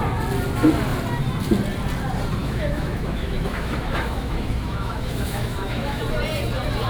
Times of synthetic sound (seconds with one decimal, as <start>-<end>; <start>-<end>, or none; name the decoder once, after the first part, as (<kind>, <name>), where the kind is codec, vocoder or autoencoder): 2.4-6.0 (autoencoder, DAC-VAE)